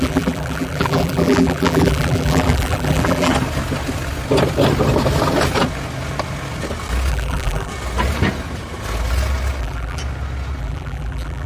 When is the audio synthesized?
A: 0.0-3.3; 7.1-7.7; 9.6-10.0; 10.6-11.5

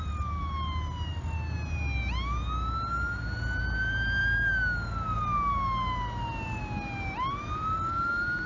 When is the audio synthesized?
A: none